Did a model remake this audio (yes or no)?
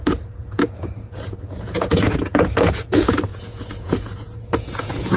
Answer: yes